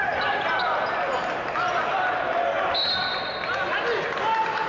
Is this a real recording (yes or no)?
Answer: yes